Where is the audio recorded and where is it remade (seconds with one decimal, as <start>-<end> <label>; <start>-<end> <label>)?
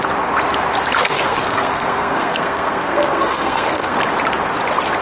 0.0-1.0 recorded; 1.0-4.0 remade; 4.0-5.0 recorded